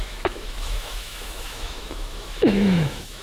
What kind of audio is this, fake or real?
fake